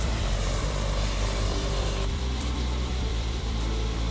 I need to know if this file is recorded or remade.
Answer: remade